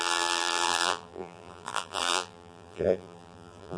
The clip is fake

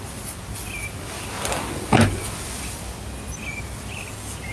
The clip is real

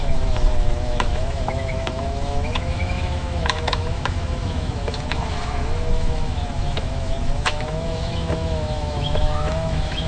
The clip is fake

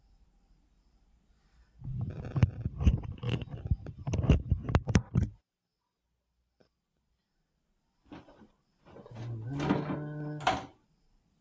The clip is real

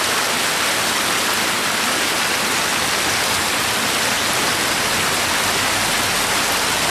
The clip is real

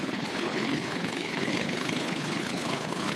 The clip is fake